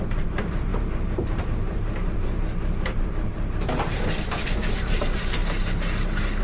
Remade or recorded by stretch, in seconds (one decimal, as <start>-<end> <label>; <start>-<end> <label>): 0.0-5.4 remade; 5.4-6.4 recorded